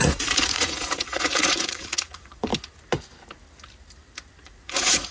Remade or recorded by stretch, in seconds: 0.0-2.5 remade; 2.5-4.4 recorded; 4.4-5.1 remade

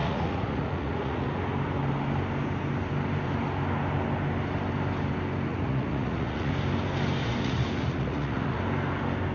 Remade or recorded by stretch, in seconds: 0.0-1.3 remade; 1.3-5.5 recorded; 5.5-6.5 remade; 6.5-7.2 recorded; 7.2-8.6 remade; 8.6-9.3 recorded

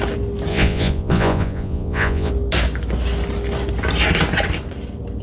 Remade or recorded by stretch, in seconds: 0.0-0.5 recorded; 0.5-2.3 remade; 2.3-5.2 recorded

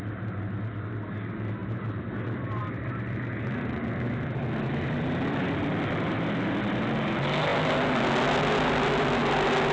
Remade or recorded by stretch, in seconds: 0.0-9.7 recorded

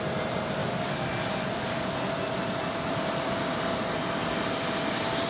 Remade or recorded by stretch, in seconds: 0.0-5.3 recorded

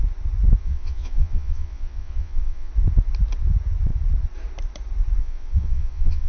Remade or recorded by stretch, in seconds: 0.0-0.6 recorded; 0.6-2.7 remade; 2.7-5.2 recorded; 5.2-6.3 remade

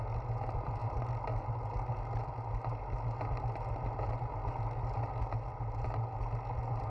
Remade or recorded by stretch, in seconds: 0.0-6.9 recorded

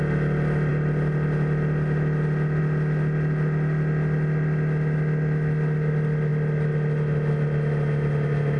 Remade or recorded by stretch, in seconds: 0.0-8.6 recorded